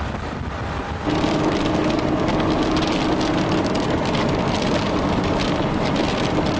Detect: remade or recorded recorded